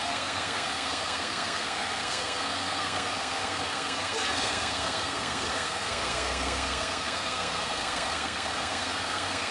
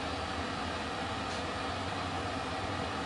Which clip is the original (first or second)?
second